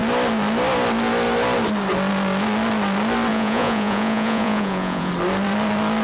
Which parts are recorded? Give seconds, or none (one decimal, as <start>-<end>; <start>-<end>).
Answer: 0.0-3.3; 5.1-6.0